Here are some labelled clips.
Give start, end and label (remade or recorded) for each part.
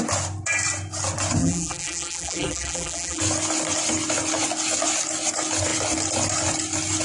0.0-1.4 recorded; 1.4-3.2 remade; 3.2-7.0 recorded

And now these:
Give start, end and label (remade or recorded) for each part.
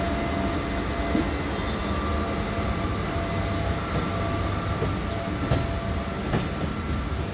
0.0-7.3 recorded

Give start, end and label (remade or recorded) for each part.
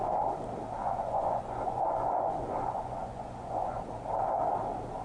0.0-0.8 recorded; 0.8-3.8 remade; 3.8-5.0 recorded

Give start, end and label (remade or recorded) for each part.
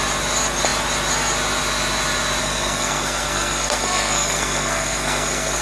0.0-2.4 recorded; 2.4-5.6 remade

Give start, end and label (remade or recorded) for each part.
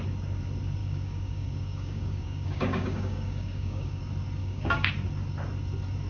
0.0-0.8 recorded; 0.8-4.0 remade; 4.0-4.4 recorded; 4.4-4.9 remade; 4.9-6.1 recorded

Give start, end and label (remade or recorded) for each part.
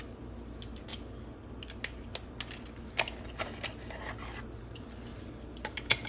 0.0-6.1 recorded